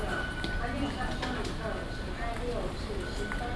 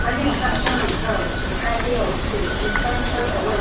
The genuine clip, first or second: first